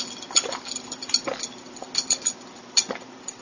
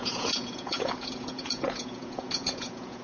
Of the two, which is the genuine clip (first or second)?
first